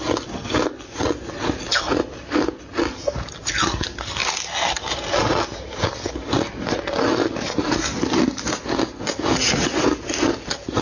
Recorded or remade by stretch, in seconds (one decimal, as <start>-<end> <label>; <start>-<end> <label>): 0.0-10.8 recorded